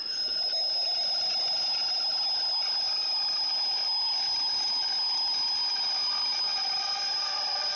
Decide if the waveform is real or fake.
real